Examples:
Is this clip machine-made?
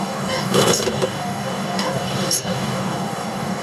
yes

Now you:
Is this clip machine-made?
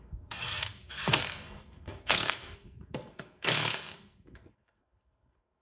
yes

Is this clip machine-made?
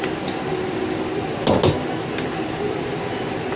no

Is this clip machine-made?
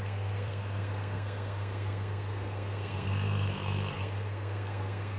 yes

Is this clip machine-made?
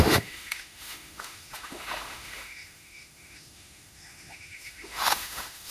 yes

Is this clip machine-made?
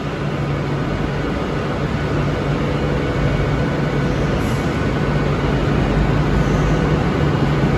no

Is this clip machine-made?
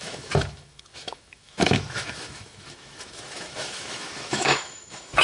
yes